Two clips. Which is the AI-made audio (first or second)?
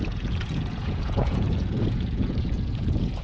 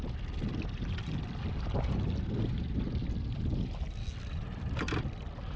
first